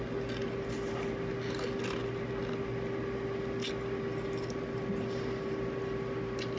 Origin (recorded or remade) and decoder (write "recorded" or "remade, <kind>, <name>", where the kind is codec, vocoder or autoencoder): recorded